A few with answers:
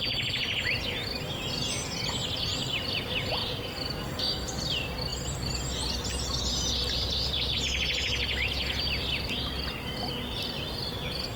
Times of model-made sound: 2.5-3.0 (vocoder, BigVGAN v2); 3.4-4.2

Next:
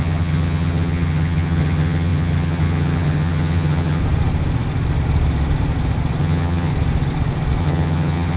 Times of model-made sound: 0.0-4.0 (vocoder, HiFi-GAN); 6.2-6.7; 7.6-8.4

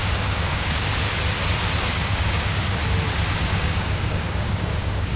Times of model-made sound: 0.0-0.9 (codec, DAC); 1.9-2.8; 3.4-5.2

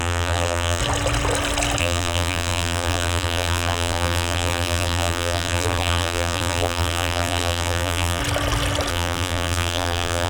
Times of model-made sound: 0.0-0.8 (vocoder, BigVGAN v2); 1.8-8.2; 8.9-10.3

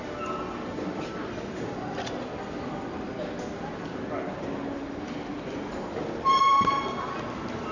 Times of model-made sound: none

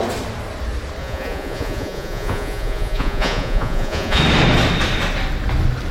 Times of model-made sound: 1.0-4.2 (vocoder, Vocos)

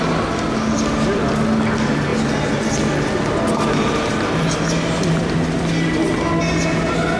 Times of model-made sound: none

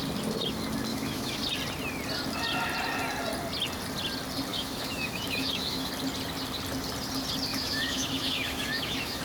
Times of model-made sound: 0.9-1.4 (autoencoder, DAC-VAE); 4.5-5.9; 7.5-9.2